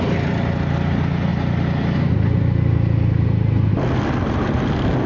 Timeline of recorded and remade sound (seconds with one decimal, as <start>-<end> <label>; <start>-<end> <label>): 0.0-5.1 recorded